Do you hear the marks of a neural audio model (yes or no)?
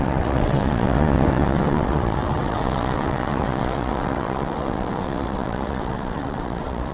yes